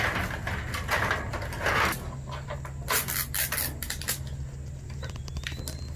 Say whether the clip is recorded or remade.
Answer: recorded